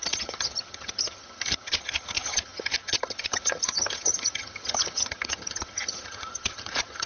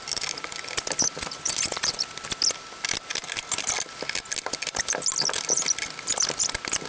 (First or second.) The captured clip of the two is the second